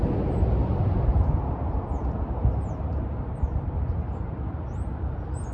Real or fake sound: real